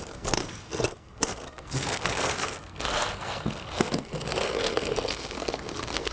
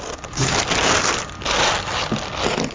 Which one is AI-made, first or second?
first